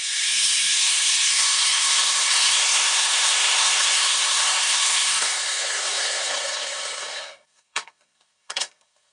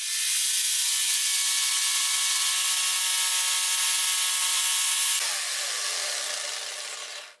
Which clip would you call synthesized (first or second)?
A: first